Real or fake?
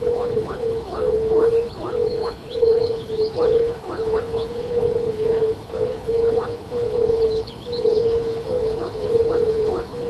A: fake